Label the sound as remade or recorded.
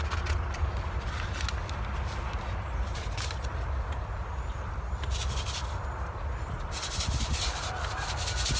recorded